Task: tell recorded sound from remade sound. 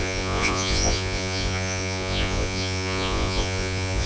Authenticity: remade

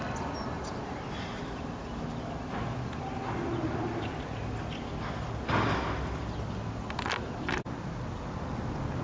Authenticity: recorded